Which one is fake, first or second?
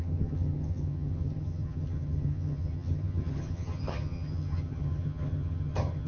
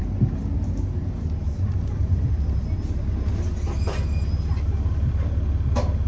first